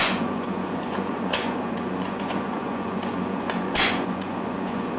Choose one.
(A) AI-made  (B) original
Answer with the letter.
A